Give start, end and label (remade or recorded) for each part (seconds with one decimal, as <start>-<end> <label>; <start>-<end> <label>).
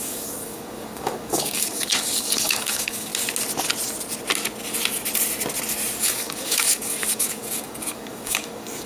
0.0-3.1 remade; 3.1-6.0 recorded; 6.0-8.9 remade